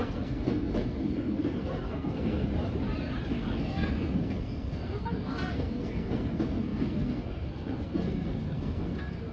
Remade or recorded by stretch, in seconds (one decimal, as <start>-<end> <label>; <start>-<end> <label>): 0.0-2.5 remade; 2.5-3.3 recorded; 3.3-9.3 remade